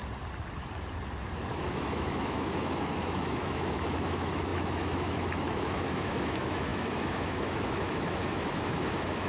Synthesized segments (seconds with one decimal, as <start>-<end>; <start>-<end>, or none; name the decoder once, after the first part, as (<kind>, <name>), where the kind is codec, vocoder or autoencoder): 1.5-9.3 (autoencoder, DAC-VAE)